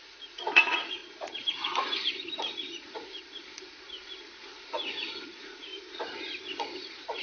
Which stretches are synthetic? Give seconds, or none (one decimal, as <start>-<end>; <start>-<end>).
0.0-3.0; 5.0-5.7